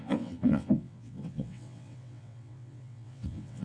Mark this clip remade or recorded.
remade